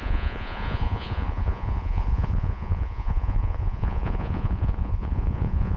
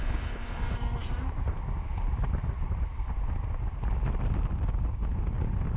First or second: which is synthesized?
first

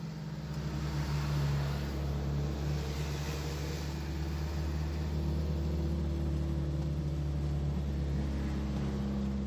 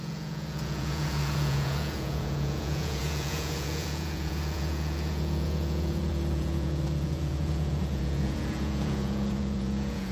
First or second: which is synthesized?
second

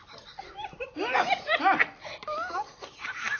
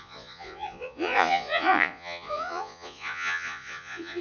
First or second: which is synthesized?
second